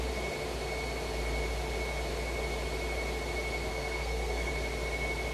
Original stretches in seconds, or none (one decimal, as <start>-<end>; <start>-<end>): 0.0-3.7; 4.5-5.3